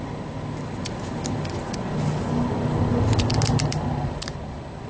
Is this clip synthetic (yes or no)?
no